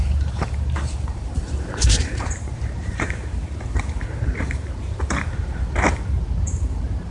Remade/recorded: remade